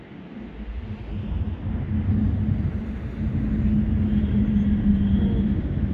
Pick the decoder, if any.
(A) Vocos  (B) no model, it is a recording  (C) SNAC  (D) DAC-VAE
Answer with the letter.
B